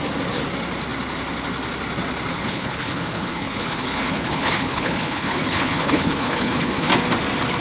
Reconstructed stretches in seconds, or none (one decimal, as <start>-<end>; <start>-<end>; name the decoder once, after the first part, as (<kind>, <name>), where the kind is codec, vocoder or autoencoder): 2.3-6.9 (codec, HILCodec)